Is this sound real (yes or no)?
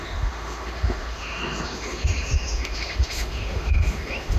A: no